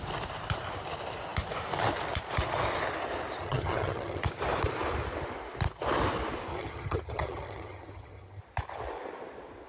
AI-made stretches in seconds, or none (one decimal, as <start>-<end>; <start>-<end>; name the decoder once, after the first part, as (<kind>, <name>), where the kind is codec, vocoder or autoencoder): 3.4-4.2 (vocoder, HiFi-GAN); 6.5-8.4